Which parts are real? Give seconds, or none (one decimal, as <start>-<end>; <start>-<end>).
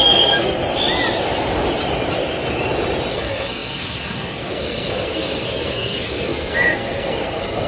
0.6-3.1